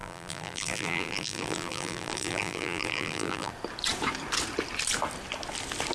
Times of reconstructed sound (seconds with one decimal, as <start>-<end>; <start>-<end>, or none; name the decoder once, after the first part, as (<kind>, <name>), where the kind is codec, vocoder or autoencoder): 0.0-3.5 (vocoder, BigVGAN v2)